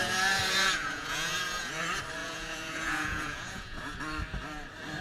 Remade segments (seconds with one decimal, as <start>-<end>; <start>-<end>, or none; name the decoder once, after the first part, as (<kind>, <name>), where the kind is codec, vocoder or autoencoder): 0.0-1.8 (vocoder, Vocos); 2.2-3.8